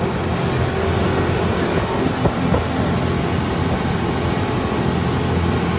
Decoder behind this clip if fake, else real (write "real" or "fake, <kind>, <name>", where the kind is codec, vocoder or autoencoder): real